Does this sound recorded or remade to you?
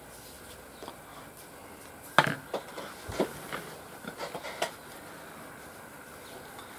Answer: recorded